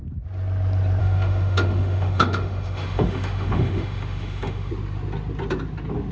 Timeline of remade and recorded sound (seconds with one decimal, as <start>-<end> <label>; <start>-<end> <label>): 0.0-1.0 recorded; 1.0-4.7 remade; 4.7-6.1 recorded